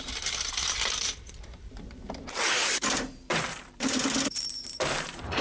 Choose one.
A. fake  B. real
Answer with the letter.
A